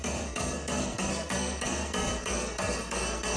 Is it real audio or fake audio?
fake